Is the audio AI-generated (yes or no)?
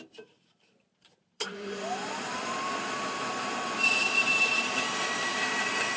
yes